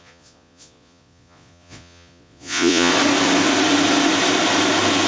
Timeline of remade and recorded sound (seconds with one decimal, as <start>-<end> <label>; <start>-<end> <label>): 0.0-2.9 remade; 2.9-5.1 recorded